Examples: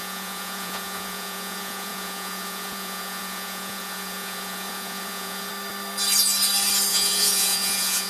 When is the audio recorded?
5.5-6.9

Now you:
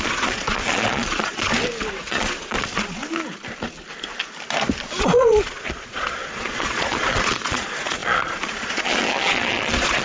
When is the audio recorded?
1.5-2.0; 3.0-5.0

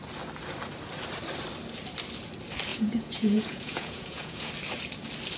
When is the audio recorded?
0.0-2.7; 4.5-5.4

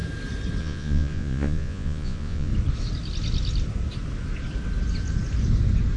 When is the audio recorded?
0.0-0.6; 2.5-6.0

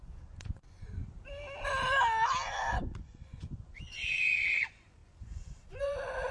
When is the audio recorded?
1.0-2.7

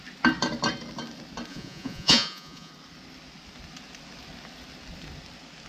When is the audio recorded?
0.0-1.5; 2.7-5.7